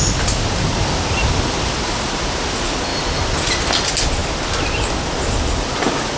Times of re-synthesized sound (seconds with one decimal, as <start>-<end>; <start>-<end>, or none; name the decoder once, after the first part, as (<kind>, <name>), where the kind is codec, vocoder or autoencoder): none